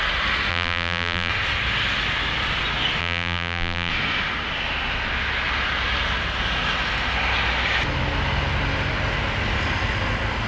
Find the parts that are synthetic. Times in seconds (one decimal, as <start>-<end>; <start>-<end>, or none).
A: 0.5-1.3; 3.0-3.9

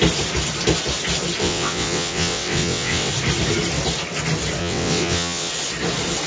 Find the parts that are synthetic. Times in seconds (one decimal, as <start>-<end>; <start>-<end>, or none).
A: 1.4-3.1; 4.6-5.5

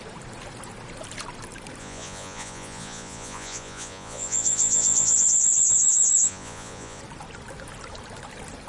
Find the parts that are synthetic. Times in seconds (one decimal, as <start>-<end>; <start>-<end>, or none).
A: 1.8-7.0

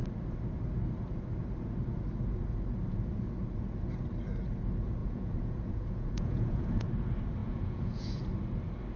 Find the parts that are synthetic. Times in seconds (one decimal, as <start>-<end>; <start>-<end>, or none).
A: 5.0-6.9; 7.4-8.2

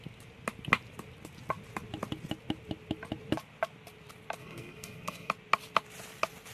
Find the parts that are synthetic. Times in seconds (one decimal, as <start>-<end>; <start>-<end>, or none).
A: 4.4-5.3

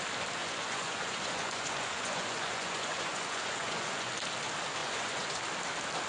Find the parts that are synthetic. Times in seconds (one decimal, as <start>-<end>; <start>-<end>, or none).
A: 0.4-4.1; 4.8-5.4